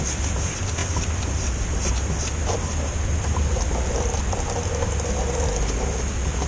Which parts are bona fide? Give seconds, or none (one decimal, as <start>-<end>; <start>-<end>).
0.0-0.8; 1.9-6.5